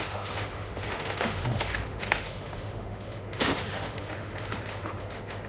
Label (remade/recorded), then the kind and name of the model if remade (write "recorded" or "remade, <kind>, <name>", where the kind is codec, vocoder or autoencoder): remade, autoencoder, DAC-VAE